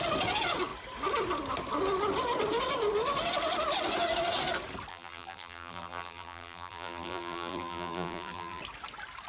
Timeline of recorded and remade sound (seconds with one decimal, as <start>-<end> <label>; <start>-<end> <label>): 0.0-4.9 recorded; 4.9-8.6 remade; 8.6-9.3 recorded